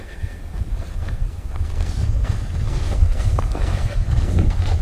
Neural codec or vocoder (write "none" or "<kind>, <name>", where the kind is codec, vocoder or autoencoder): codec, SNAC